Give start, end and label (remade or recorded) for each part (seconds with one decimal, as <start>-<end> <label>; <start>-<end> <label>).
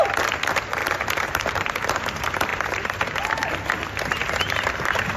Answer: 0.0-0.8 recorded; 0.8-1.7 remade; 1.7-2.5 recorded; 2.5-3.2 remade; 3.2-5.2 recorded